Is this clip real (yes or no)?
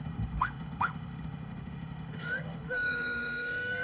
no